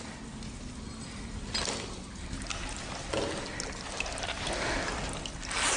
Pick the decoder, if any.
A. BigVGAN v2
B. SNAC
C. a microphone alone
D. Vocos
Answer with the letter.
C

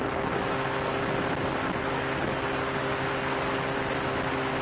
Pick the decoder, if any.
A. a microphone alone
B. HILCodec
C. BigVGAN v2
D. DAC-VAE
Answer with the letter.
A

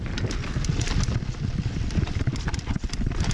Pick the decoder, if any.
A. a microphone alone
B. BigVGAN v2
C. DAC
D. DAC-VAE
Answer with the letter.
A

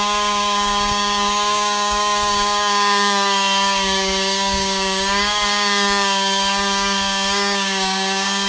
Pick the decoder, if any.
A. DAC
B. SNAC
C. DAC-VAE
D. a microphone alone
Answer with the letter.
A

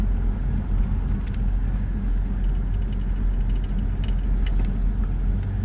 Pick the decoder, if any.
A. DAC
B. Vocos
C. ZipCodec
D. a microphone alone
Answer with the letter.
D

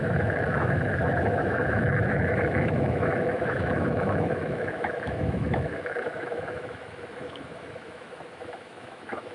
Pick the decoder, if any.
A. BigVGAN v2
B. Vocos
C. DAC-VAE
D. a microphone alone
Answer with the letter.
C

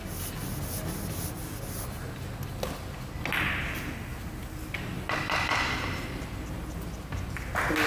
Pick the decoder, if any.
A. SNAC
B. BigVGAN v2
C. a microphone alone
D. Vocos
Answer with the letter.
C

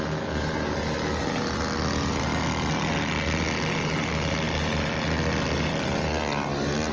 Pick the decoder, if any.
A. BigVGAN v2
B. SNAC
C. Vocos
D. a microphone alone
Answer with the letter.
D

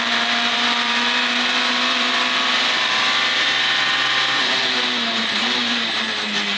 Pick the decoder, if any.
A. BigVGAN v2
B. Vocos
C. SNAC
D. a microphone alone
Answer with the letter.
A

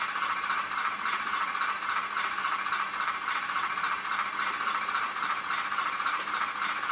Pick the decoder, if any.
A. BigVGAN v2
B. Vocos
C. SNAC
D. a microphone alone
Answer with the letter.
A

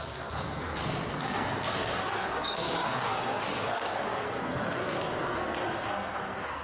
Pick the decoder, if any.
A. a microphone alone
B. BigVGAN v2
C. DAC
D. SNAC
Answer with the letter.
D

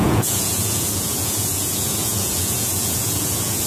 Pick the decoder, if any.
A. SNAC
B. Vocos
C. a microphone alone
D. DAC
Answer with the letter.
B